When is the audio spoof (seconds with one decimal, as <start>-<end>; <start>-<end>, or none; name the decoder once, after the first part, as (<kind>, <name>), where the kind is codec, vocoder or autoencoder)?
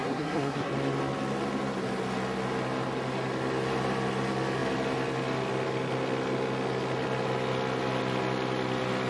0.0-0.7 (codec, SNAC)